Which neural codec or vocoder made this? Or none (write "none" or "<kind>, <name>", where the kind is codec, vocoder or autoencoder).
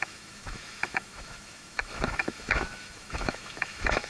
autoencoder, DAC-VAE